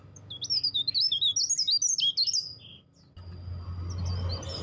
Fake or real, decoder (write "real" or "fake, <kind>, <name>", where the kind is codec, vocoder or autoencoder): real